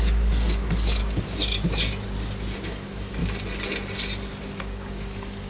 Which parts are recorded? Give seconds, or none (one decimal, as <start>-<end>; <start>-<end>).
1.0-2.7; 3.2-4.6